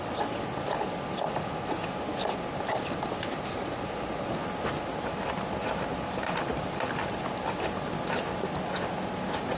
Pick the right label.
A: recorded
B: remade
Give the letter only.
A